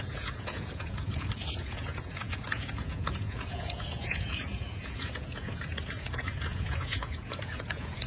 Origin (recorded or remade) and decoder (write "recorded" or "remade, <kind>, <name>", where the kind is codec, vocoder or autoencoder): remade, vocoder, Vocos